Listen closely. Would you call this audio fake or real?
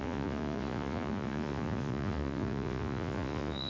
fake